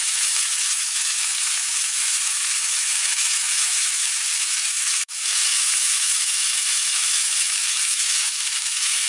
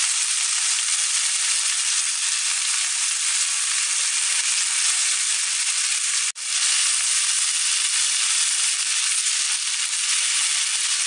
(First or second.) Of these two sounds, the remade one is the first